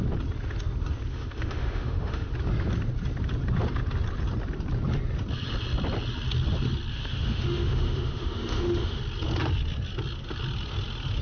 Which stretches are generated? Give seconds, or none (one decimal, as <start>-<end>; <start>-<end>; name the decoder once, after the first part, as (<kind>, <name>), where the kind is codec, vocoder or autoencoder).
1.1-2.3 (autoencoder, DAC-VAE); 6.9-9.0